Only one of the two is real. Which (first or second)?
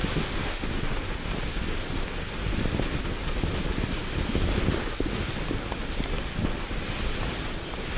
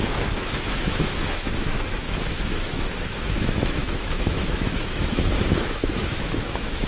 first